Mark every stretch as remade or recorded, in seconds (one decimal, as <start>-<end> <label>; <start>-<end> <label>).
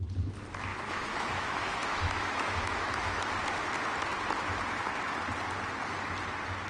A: 0.0-0.7 recorded; 0.7-3.3 remade; 3.3-6.7 recorded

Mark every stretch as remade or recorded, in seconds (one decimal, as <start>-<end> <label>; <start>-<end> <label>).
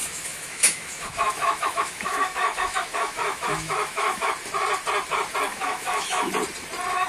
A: 0.0-4.3 remade; 4.3-5.5 recorded; 5.5-6.3 remade; 6.3-7.1 recorded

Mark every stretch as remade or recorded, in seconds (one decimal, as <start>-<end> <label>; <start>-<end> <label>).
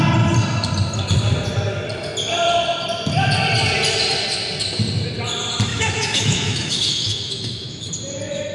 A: 0.0-5.7 recorded; 5.7-7.9 remade; 7.9-8.5 recorded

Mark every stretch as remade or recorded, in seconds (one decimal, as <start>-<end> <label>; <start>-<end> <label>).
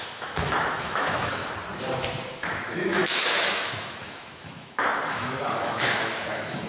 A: 0.0-1.4 remade; 1.4-2.3 recorded; 2.3-6.7 remade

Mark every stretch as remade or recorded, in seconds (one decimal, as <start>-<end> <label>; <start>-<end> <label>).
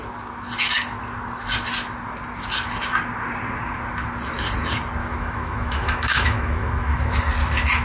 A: 0.0-5.0 recorded; 5.0-7.2 remade; 7.2-7.8 recorded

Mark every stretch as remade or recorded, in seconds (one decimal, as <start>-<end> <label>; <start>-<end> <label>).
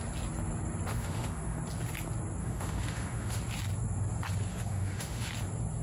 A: 0.0-0.9 recorded; 0.9-1.6 remade; 1.6-2.4 recorded; 2.4-3.4 remade; 3.4-4.5 recorded; 4.5-5.3 remade; 5.3-5.8 recorded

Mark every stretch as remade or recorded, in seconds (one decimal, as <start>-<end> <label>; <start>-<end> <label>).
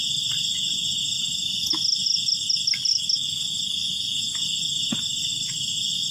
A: 0.0-2.9 recorded; 2.9-3.4 remade; 3.4-6.1 recorded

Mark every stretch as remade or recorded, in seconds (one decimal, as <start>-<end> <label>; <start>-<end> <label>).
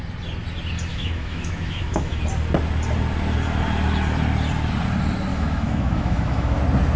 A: 0.0-0.9 recorded; 0.9-2.2 remade; 2.2-5.3 recorded; 5.3-6.6 remade; 6.6-7.0 recorded